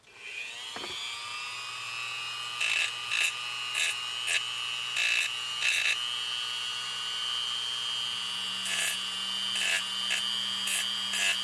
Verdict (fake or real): real